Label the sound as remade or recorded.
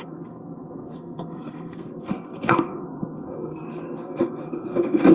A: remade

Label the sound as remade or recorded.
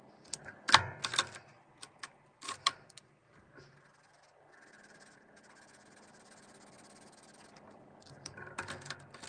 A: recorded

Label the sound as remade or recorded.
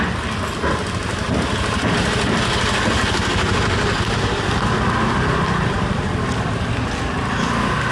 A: recorded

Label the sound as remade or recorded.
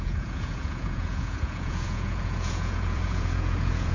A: remade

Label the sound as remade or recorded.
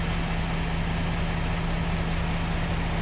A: recorded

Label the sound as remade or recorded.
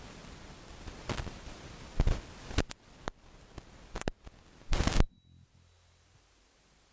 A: recorded